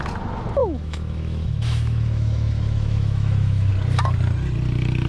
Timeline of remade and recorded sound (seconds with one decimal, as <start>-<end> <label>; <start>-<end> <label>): 0.0-0.6 recorded; 0.6-3.7 remade; 3.7-5.1 recorded